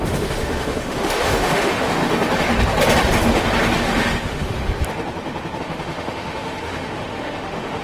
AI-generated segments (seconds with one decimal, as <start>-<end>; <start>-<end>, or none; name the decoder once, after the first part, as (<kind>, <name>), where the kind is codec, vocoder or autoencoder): 0.0-2.0 (autoencoder, DAC-VAE); 3.8-4.6; 5.6-7.8